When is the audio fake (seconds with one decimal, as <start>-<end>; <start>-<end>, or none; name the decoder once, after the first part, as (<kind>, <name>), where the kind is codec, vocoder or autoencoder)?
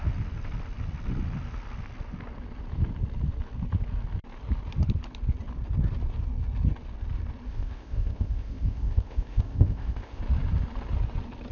7.5-10.2 (codec, ZipCodec)